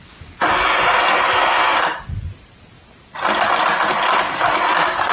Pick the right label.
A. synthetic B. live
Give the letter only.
B